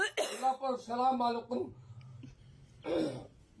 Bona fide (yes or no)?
yes